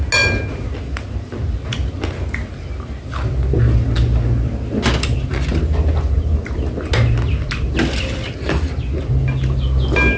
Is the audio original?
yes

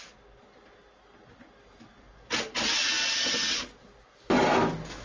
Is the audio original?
yes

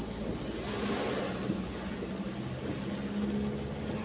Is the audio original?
yes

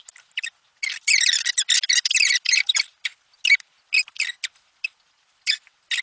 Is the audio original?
yes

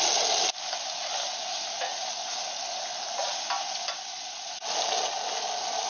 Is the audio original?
yes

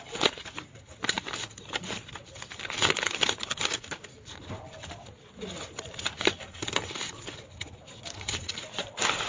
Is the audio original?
yes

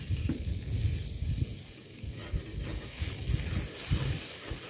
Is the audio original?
yes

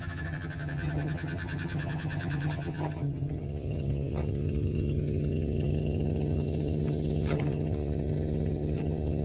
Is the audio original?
no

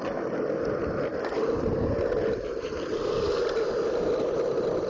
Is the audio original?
yes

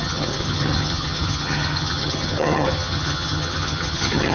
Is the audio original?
no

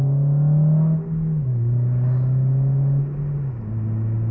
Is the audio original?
yes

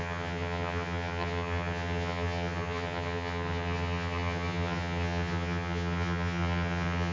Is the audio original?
no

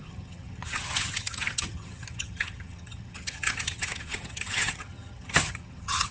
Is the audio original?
no